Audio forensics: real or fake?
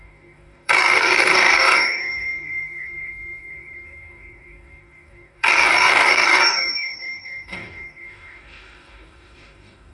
fake